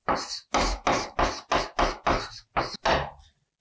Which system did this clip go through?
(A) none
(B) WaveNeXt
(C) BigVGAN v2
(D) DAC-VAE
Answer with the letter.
A